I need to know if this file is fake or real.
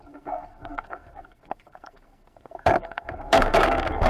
fake